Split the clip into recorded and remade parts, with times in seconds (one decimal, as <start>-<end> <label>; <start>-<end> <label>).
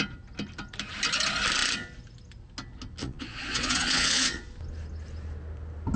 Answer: 0.0-3.0 recorded; 3.0-4.4 remade; 4.4-6.0 recorded